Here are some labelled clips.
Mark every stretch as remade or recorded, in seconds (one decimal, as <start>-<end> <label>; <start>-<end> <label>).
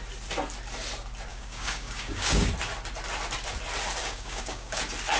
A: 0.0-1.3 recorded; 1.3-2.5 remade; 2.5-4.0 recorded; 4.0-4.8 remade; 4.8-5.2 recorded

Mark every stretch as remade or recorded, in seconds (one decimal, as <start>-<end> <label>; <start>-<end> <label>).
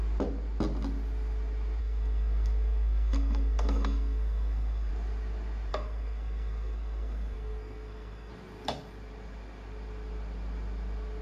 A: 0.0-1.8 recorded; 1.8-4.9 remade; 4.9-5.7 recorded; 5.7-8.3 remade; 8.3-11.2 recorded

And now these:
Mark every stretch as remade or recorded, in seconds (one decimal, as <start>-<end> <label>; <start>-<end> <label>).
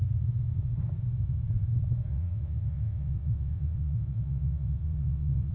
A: 0.0-2.1 recorded; 2.1-5.5 remade